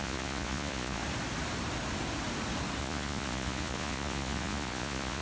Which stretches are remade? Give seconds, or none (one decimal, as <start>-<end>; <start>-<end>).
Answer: 0.0-1.0; 2.8-5.2